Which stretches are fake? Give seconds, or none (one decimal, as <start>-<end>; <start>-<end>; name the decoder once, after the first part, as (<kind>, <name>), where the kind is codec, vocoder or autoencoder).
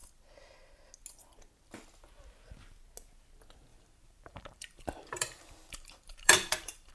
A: 3.7-6.9 (vocoder, BigVGAN v2)